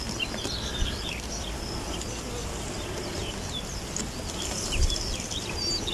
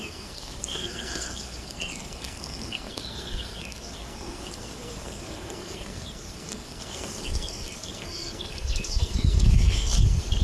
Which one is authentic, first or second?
first